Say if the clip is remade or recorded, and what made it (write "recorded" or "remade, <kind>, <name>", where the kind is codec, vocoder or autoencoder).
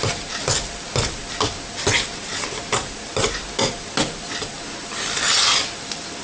recorded